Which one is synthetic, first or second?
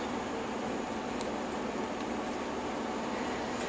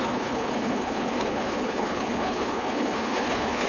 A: second